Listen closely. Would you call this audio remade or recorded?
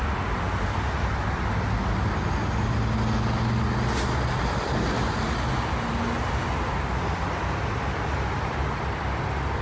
recorded